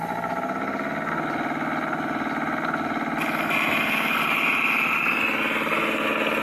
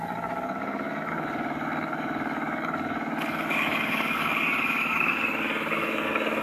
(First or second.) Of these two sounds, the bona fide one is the first